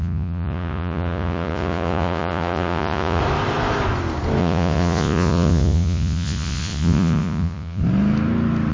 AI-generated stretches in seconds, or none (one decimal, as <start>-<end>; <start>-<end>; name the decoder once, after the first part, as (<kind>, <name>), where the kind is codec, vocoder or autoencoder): 0.0-3.2 (vocoder, Vocos); 4.4-7.8